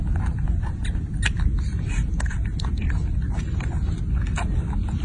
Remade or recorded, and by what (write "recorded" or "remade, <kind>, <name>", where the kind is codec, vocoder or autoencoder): recorded